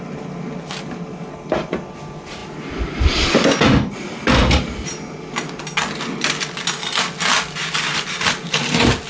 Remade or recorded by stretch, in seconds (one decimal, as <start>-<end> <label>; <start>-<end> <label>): 0.0-9.1 recorded